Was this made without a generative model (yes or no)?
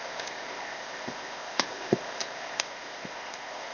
no